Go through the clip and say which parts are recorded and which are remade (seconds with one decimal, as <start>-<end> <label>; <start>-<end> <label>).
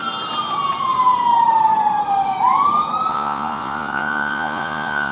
0.0-3.1 recorded; 3.1-5.1 remade